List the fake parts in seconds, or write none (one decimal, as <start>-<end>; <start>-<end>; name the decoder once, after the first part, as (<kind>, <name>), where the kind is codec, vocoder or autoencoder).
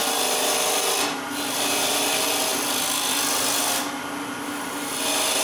none